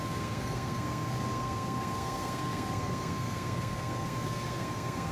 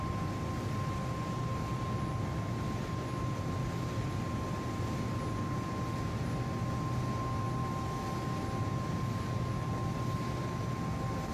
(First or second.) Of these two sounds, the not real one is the first